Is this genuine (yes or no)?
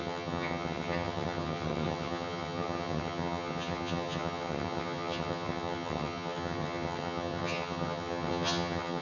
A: no